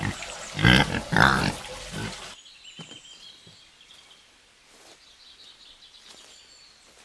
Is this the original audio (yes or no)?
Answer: yes